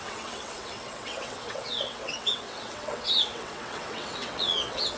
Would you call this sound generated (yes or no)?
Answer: yes